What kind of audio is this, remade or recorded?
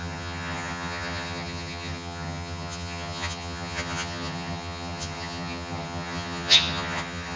remade